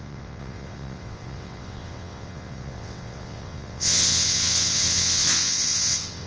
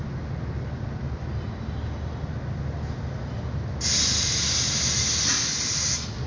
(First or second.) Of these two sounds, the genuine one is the second